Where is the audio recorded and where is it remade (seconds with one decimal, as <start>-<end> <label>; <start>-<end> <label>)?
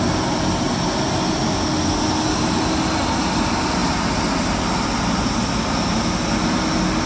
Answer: 0.0-7.1 recorded